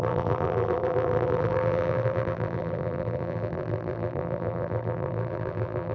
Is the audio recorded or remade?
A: remade